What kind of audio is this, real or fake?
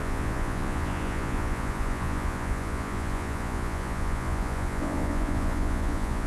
fake